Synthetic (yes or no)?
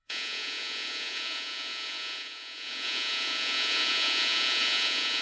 yes